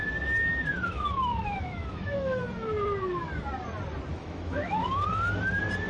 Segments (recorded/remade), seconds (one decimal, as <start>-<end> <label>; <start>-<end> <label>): 0.0-0.7 recorded; 0.7-2.4 remade; 2.4-4.1 recorded; 4.1-5.1 remade; 5.1-5.9 recorded